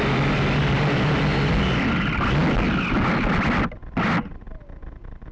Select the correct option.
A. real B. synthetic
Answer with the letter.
A